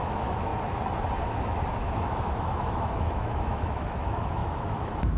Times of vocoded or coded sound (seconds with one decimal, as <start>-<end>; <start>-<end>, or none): 0.0-0.5; 1.2-5.2